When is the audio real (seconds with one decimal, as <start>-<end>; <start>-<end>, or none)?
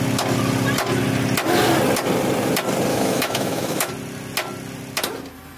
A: 0.0-2.9; 3.9-5.6